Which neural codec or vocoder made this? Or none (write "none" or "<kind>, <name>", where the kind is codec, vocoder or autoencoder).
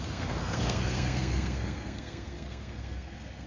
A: codec, SNAC